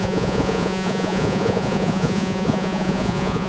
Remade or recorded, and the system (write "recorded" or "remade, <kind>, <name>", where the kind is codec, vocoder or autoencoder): remade, vocoder, Vocos